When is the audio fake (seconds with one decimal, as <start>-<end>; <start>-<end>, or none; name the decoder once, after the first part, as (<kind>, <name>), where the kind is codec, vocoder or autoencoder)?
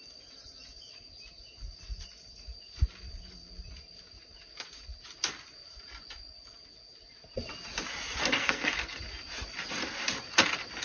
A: 8.2-9.0 (codec, SNAC)